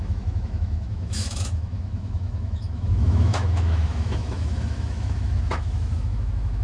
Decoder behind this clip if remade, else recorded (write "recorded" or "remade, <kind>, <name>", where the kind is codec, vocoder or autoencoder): remade, autoencoder, DAC-VAE